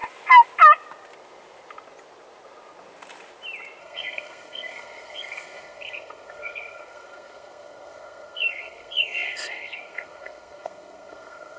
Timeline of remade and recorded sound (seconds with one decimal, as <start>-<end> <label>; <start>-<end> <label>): 0.0-3.8 recorded; 3.8-11.6 remade